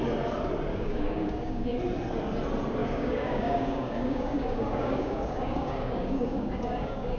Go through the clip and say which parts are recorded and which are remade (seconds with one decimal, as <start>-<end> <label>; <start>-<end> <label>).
0.0-0.7 recorded; 0.7-1.8 remade; 1.8-2.8 recorded; 2.8-7.2 remade